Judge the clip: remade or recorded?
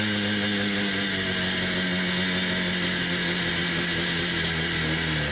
recorded